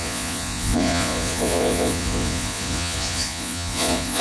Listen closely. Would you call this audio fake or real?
fake